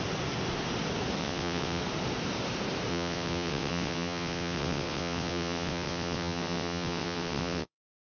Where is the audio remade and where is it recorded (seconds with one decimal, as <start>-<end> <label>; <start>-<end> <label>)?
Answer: 0.0-1.2 recorded; 1.2-1.8 remade; 1.8-2.9 recorded; 2.9-8.0 remade